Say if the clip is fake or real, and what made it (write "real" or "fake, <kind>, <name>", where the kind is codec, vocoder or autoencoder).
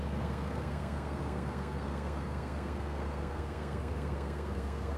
fake, codec, SNAC